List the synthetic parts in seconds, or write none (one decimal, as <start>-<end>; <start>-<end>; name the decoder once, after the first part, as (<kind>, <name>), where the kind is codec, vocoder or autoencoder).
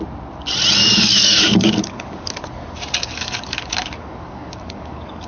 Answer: 0.8-2.3 (codec, DAC); 3.1-5.3